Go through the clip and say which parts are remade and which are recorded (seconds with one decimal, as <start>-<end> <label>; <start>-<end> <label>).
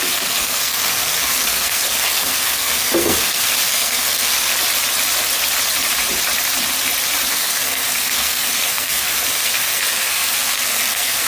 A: 0.0-4.5 remade; 4.5-7.3 recorded; 7.3-11.3 remade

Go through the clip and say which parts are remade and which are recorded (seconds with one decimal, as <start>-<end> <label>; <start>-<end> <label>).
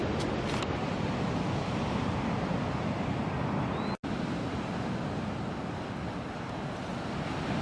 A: 0.0-7.6 recorded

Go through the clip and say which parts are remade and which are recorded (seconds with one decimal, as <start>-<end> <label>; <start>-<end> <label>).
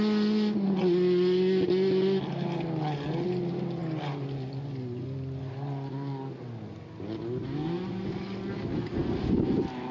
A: 0.0-9.9 recorded